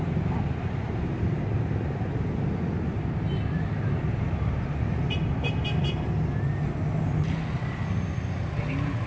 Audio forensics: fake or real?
real